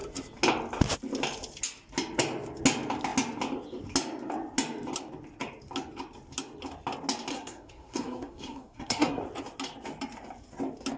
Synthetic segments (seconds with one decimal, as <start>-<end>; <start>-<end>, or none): 7.3-9.2